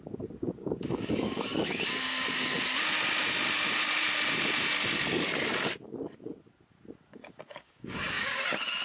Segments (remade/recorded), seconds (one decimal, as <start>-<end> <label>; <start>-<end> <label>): 0.0-0.6 recorded; 0.6-2.6 remade; 2.6-7.1 recorded; 7.1-8.4 remade; 8.4-8.8 recorded

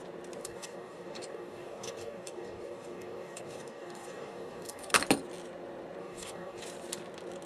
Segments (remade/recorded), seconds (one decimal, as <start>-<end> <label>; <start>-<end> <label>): 0.0-0.4 recorded; 0.4-4.9 remade; 4.9-6.0 recorded; 6.0-6.6 remade; 6.6-7.5 recorded

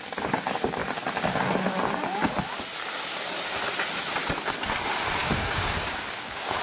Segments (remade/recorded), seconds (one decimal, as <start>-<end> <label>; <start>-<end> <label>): 0.0-5.2 recorded; 5.2-6.6 remade

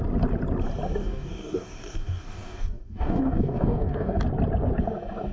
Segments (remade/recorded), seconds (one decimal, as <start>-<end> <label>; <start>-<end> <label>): 0.0-1.0 recorded; 1.0-4.2 remade; 4.2-5.3 recorded

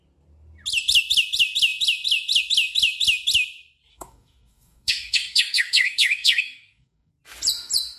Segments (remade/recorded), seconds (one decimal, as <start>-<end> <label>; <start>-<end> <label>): 0.0-3.9 recorded; 3.9-7.1 remade; 7.1-8.0 recorded

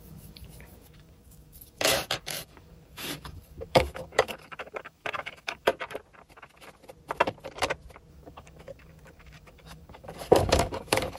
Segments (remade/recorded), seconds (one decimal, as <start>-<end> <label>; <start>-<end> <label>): 0.0-5.7 remade; 5.7-8.1 recorded; 8.1-11.2 remade

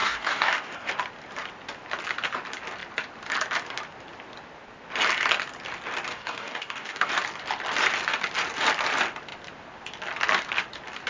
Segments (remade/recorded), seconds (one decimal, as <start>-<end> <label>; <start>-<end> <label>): 0.0-0.9 remade; 0.9-6.1 recorded; 6.1-7.1 remade; 7.1-11.1 recorded